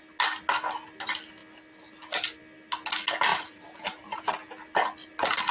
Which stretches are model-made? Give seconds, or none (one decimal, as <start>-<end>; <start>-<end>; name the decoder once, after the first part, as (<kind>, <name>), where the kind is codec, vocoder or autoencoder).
3.3-4.3 (vocoder, BigVGAN v2)